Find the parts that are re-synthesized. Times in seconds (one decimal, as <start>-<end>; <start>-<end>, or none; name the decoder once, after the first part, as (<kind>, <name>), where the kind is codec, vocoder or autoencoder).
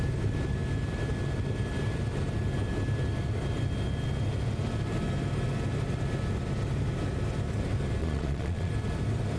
8.0-8.7 (vocoder, Vocos)